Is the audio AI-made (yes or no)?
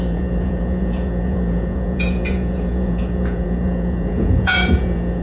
yes